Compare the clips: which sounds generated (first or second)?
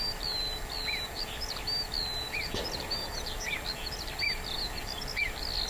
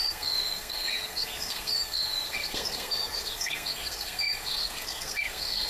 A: second